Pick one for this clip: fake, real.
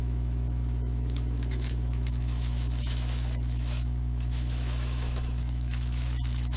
fake